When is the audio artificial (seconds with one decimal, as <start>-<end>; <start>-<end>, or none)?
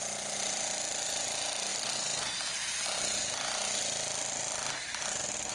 none